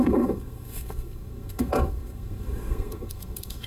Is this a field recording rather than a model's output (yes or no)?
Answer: no